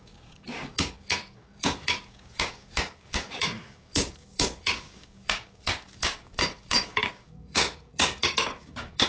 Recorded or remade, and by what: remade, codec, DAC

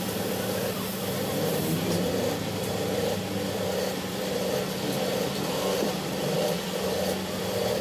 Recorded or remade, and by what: remade, vocoder, BigVGAN v2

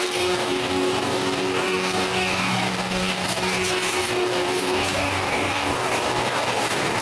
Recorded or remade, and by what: remade, codec, DAC